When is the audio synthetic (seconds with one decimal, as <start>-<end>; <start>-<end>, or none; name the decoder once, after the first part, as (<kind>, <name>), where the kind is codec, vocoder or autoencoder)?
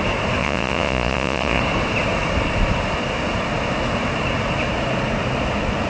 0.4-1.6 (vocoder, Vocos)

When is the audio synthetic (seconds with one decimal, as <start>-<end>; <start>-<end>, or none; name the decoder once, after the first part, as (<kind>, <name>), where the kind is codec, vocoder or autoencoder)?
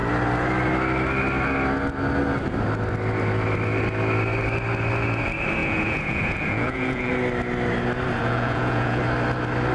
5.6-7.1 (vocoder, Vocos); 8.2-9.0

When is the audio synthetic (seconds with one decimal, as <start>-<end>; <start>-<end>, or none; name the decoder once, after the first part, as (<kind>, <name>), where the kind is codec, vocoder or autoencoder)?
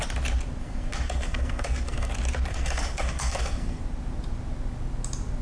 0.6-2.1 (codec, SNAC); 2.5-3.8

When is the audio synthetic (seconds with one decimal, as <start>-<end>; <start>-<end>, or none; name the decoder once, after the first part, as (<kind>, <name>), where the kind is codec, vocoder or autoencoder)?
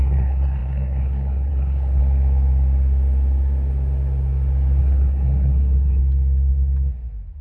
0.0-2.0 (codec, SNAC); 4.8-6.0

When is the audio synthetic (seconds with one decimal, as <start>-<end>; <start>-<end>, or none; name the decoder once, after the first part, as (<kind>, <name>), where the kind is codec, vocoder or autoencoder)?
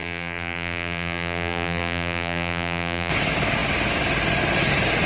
0.0-3.1 (vocoder, BigVGAN v2)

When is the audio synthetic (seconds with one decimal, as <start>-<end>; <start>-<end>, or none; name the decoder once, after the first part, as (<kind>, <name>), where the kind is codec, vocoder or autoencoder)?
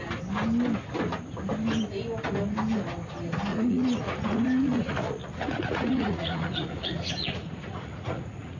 3.5-8.6 (vocoder, Vocos)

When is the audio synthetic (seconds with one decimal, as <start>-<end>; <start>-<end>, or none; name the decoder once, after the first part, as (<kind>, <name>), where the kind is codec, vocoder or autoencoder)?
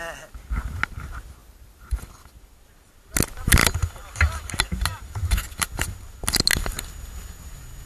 1.4-2.0 (vocoder, BigVGAN v2)